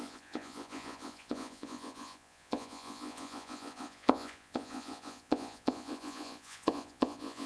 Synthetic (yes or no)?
yes